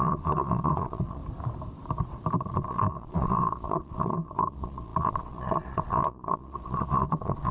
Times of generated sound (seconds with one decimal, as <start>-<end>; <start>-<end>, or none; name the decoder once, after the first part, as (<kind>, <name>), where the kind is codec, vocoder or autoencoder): 0.0-1.2 (vocoder, Vocos); 2.4-7.5